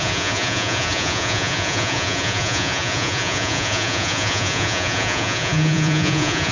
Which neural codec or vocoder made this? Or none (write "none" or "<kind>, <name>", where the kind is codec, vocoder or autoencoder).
vocoder, Vocos